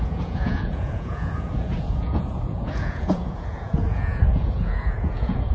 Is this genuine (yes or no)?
no